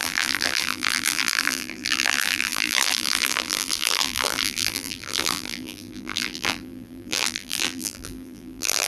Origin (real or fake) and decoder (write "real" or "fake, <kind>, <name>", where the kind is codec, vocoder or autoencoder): fake, vocoder, BigVGAN v2